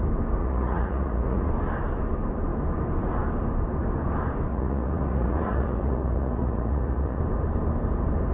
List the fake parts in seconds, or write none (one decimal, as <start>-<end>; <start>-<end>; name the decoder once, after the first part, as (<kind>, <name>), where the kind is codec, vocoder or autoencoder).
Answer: 0.4-1.5 (vocoder, Vocos); 4.5-7.2